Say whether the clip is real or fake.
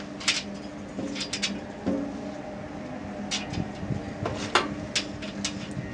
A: real